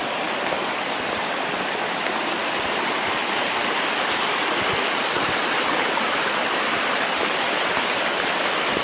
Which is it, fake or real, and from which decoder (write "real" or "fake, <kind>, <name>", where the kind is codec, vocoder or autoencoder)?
real